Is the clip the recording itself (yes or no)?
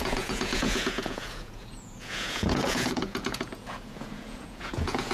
no